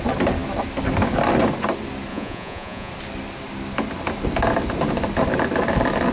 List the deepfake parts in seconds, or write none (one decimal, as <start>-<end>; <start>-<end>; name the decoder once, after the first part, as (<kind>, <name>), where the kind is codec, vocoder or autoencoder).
2.1-2.9 (vocoder, Vocos)